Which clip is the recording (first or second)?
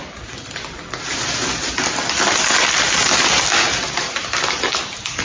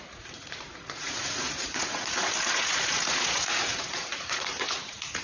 first